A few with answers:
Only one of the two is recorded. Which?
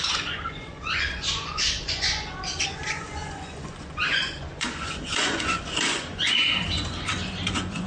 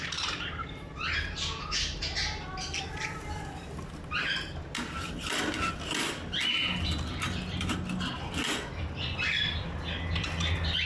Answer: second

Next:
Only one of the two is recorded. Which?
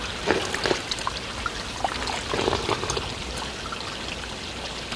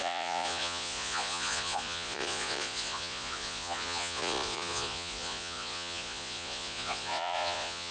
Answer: first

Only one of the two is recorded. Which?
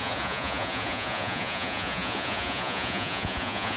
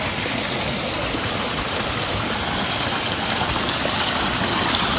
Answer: second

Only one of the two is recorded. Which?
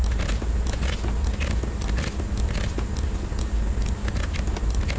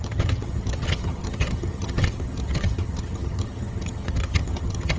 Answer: first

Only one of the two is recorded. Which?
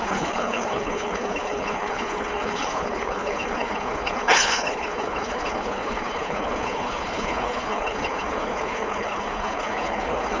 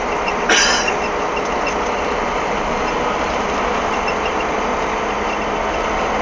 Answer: second